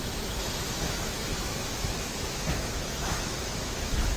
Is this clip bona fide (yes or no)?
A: no